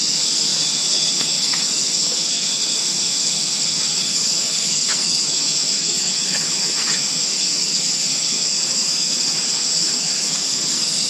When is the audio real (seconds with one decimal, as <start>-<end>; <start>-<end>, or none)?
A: none